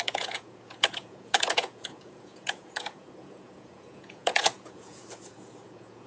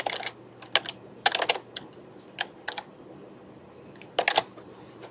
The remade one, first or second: first